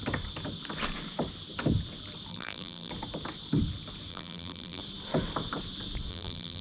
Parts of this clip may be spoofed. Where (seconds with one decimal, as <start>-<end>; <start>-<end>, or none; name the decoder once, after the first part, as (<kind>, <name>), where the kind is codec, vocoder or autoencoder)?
2.3-2.9 (vocoder, BigVGAN v2); 4.1-4.8; 6.1-6.6